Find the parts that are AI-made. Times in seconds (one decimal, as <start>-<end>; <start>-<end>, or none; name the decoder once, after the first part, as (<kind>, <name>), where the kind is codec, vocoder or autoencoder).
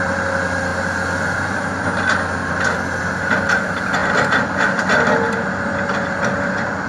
0.0-0.7 (vocoder, BigVGAN v2); 3.2-4.0; 5.9-6.9